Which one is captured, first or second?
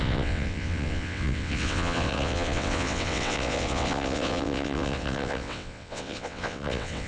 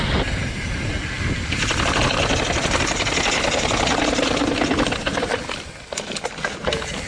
second